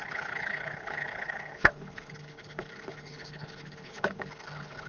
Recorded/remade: remade